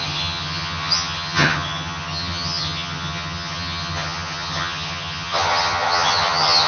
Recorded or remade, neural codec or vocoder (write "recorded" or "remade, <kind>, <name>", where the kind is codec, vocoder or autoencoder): remade, vocoder, HiFi-GAN